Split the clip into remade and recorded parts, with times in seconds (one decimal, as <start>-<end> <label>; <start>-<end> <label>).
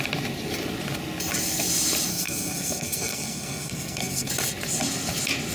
0.0-2.1 recorded; 2.1-4.3 remade; 4.3-5.5 recorded